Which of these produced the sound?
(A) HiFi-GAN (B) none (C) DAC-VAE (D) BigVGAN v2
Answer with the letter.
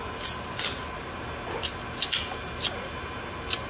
B